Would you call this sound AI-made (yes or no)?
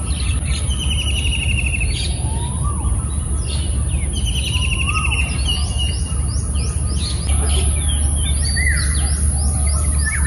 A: no